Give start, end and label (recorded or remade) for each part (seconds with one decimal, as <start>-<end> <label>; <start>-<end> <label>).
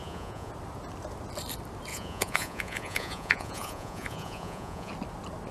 0.0-0.5 remade; 0.5-1.9 recorded; 1.9-4.9 remade; 4.9-5.5 recorded